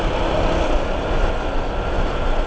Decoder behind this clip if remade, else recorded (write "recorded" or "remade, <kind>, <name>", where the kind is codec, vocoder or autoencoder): recorded